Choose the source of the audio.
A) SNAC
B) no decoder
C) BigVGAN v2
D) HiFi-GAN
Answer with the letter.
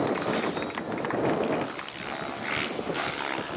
B